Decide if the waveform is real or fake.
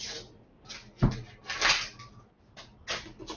real